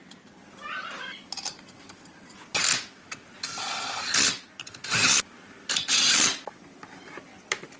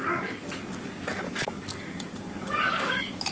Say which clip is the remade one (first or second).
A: second